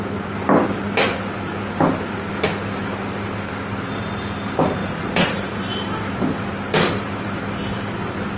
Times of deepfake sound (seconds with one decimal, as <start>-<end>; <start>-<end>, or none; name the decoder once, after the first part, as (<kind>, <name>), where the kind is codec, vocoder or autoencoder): 4.8-5.6 (vocoder, Vocos)